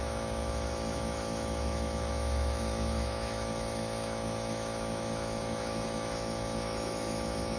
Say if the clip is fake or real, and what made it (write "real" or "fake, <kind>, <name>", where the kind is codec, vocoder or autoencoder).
fake, autoencoder, DAC-VAE